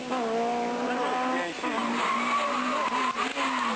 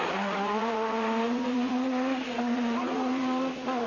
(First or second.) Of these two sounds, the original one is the first